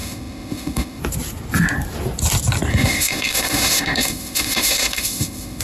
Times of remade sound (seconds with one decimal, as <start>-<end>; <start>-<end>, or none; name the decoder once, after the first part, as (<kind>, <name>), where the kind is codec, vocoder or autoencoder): 0.0-1.0 (autoencoder, DAC-VAE); 2.7-5.6